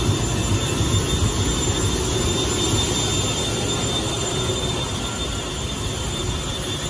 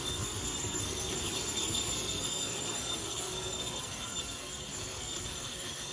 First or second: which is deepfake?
second